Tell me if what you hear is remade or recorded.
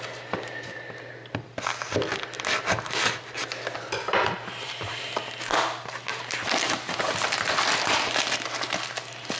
recorded